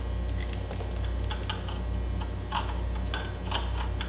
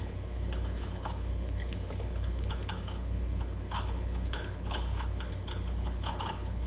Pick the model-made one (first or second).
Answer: second